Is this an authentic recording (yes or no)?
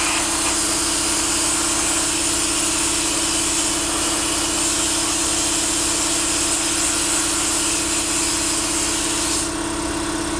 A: yes